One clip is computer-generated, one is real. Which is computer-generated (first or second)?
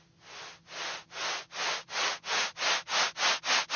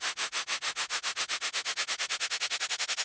second